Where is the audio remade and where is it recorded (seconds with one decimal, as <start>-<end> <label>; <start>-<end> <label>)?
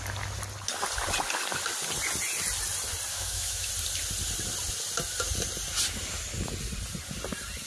0.0-3.1 recorded; 3.1-3.7 remade; 3.7-7.7 recorded